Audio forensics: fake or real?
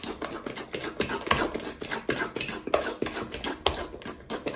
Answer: real